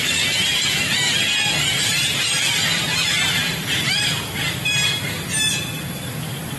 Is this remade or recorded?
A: recorded